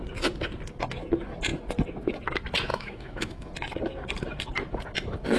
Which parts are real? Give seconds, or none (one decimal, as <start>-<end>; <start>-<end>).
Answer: 0.0-2.7; 3.5-5.4